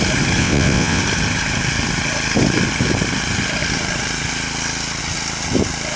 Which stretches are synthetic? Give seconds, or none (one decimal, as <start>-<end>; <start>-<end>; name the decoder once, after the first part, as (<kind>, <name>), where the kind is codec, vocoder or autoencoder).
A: 0.4-1.0 (vocoder, WaveNeXt)